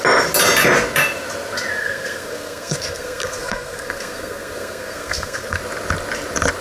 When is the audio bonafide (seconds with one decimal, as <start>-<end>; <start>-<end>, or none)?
0.0-1.8; 5.6-6.6